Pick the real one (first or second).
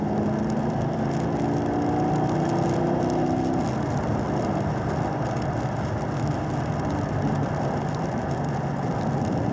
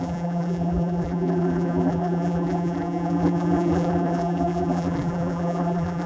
first